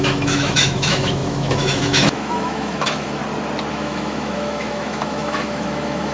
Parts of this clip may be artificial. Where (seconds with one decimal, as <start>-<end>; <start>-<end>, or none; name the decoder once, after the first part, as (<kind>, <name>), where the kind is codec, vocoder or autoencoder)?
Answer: 0.0-3.2 (autoencoder, DAC-VAE); 3.7-6.1